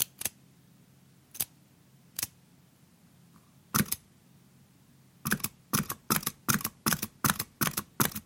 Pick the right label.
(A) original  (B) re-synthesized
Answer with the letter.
A